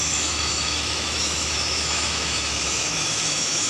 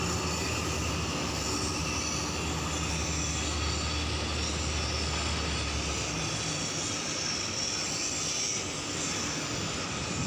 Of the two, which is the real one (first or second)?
second